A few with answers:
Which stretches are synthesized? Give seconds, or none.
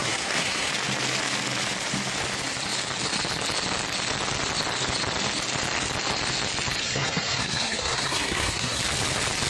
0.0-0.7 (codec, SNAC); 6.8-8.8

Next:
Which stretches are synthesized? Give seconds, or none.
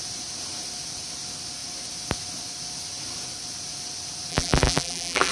4.3-5.3 (vocoder, BigVGAN v2)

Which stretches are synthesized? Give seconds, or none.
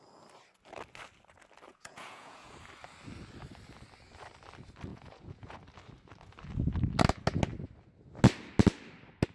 1.7-2.5 (vocoder, Vocos); 4.9-5.6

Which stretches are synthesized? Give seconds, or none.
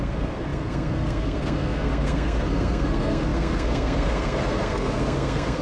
0.0-5.6 (codec, SNAC)